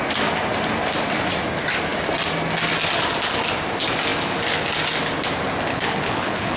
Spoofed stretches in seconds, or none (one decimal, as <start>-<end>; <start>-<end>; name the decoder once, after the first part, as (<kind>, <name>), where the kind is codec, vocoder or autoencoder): 5.7-6.6 (codec, HILCodec)